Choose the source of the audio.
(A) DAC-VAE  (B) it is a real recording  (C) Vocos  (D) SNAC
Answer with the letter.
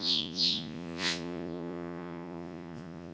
C